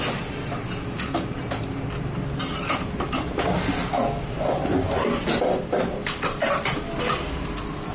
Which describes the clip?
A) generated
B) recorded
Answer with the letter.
B